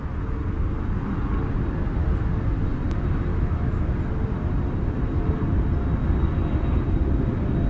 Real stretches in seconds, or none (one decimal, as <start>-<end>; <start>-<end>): 0.0-3.3; 3.9-7.7